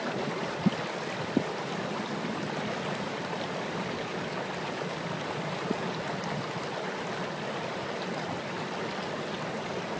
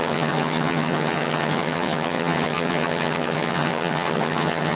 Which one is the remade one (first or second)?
second